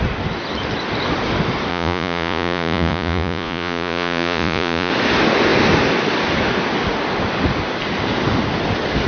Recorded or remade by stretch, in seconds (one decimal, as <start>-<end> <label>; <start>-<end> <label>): 0.0-1.7 recorded; 1.7-4.9 remade; 4.9-9.1 recorded

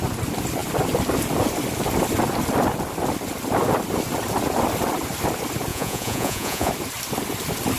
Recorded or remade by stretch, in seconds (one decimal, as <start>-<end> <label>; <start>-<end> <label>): 0.0-5.7 recorded; 5.7-6.7 remade; 6.7-7.8 recorded

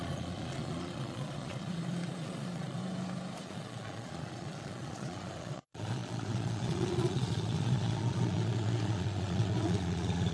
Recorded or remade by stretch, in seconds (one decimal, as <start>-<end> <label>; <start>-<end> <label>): 0.0-2.8 remade; 2.8-3.4 recorded; 3.4-10.3 remade